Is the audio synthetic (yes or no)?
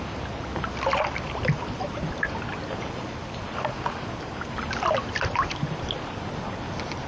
no